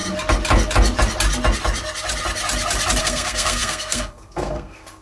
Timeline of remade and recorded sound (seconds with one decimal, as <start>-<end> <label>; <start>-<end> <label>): 0.0-3.0 recorded; 3.0-5.0 remade